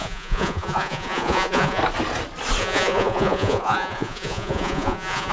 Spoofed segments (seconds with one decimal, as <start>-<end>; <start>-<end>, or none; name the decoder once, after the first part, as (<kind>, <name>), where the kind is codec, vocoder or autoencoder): 0.0-1.8 (vocoder, Vocos); 2.6-5.3